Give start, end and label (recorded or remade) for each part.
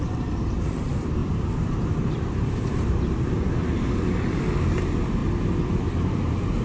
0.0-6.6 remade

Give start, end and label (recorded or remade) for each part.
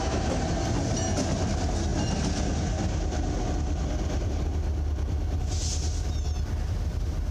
0.0-7.3 recorded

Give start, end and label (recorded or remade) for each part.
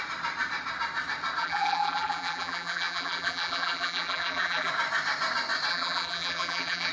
0.0-1.4 recorded; 1.4-4.7 remade; 4.7-5.7 recorded; 5.7-6.9 remade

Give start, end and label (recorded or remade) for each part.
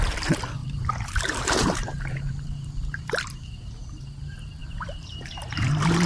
0.0-0.6 recorded; 0.6-2.8 remade; 2.8-4.6 recorded; 4.6-6.1 remade